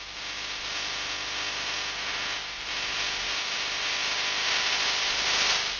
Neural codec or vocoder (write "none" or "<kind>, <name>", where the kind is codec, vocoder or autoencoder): none